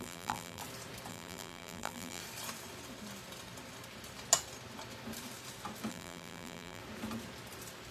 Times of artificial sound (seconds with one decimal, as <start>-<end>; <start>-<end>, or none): 0.0-0.6; 1.1-2.2; 5.9-6.8